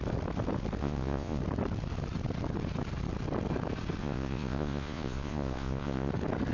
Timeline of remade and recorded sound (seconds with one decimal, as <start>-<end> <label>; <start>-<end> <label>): 0.0-0.8 recorded; 0.8-1.4 remade; 1.4-4.0 recorded; 4.0-6.1 remade; 6.1-6.5 recorded